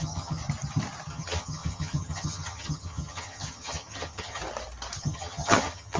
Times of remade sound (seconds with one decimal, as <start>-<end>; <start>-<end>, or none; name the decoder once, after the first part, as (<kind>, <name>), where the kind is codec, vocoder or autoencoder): 0.0-0.4 (vocoder, HiFi-GAN); 1.1-4.4; 5.0-6.0